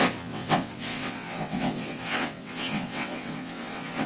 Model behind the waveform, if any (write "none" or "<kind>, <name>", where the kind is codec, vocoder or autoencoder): vocoder, WaveNeXt